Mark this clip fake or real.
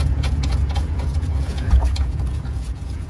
fake